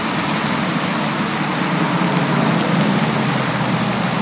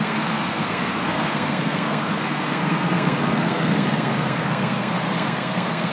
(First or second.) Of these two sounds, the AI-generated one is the second